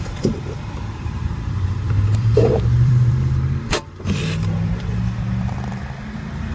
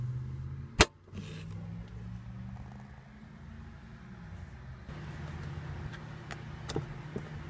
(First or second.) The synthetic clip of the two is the first